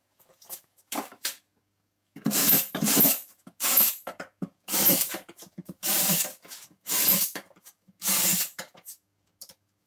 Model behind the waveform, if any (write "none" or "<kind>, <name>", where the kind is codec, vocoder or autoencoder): codec, DAC